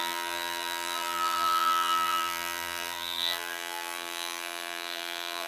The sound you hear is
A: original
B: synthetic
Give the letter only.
B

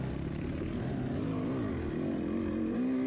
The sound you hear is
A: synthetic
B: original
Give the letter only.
B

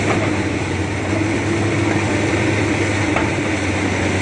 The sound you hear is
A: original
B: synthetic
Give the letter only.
B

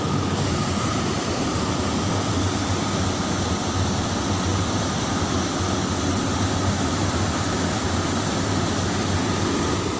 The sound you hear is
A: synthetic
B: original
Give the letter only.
B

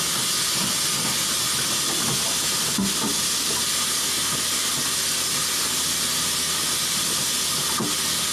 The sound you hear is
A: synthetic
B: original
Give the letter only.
B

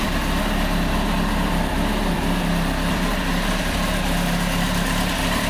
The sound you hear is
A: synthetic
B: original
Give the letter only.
A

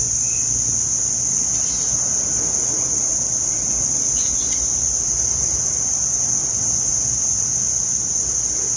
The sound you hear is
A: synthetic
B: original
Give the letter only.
B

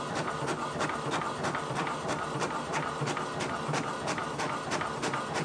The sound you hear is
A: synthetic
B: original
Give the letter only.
A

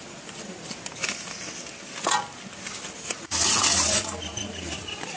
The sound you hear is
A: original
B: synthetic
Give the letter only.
A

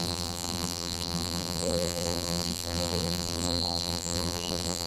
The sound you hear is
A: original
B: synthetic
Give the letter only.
B